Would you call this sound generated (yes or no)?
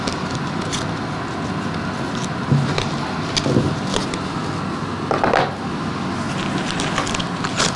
no